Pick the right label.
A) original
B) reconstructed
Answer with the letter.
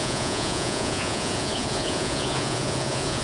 B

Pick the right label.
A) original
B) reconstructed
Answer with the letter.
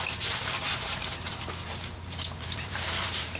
B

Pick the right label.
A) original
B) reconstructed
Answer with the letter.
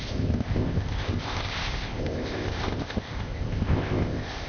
B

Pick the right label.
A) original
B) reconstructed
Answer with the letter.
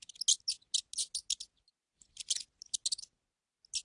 A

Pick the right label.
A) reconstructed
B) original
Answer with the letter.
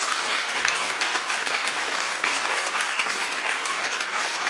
A